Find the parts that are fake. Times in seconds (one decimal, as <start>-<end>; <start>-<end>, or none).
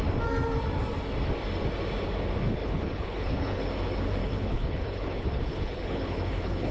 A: 2.6-3.6; 4.2-6.7